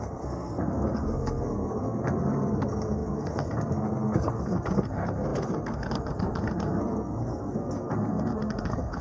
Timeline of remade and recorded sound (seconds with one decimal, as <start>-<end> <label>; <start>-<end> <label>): 0.0-9.0 remade